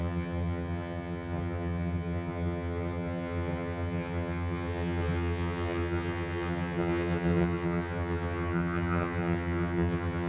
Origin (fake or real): fake